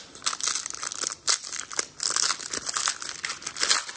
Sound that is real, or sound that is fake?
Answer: real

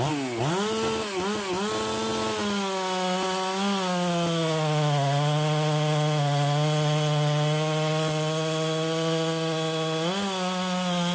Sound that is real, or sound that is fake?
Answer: real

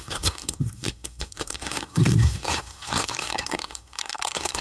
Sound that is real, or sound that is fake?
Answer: fake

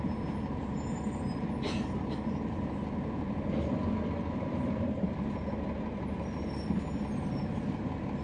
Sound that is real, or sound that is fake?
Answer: real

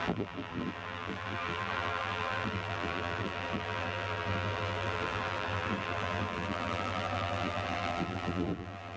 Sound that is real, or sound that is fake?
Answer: fake